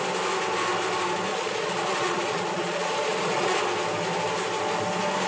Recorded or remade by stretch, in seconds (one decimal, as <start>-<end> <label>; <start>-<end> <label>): 0.0-1.3 recorded; 1.3-3.6 remade; 3.6-5.3 recorded